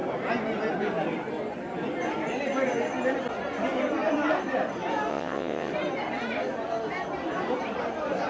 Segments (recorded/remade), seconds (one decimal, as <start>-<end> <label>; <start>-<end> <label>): 0.0-5.1 recorded; 5.1-5.7 remade; 5.7-8.3 recorded